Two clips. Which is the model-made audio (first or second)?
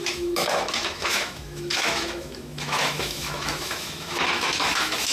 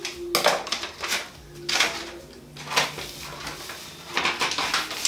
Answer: first